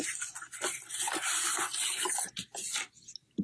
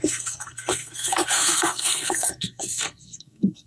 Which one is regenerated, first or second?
second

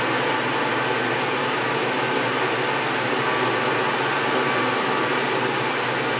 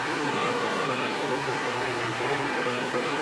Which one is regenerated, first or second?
second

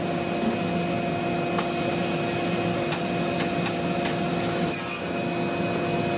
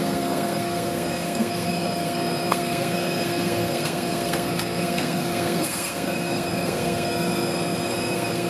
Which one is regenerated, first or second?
second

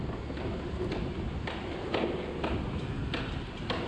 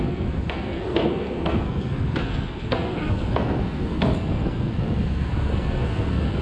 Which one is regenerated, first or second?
second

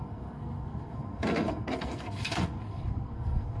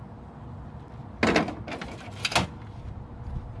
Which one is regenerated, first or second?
first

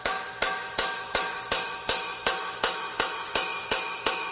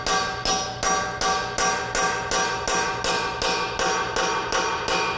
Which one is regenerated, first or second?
first